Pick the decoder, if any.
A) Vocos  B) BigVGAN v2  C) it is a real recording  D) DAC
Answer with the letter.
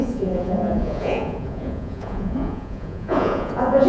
A